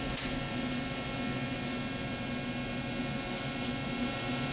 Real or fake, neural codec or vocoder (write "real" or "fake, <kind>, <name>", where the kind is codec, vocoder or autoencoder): real